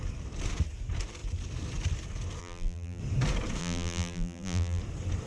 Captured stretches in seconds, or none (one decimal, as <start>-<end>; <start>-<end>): 0.0-2.4; 3.0-3.6; 4.8-5.3